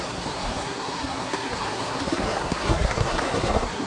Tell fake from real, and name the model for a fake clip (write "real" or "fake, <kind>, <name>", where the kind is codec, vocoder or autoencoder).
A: fake, codec, SNAC